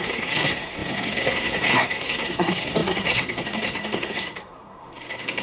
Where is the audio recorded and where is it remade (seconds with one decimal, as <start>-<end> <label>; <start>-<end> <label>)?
0.0-5.4 remade